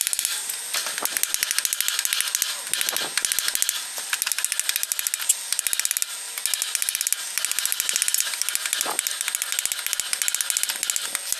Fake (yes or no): no